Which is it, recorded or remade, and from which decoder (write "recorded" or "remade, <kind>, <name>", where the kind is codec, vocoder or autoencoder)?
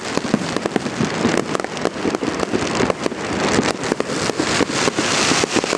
recorded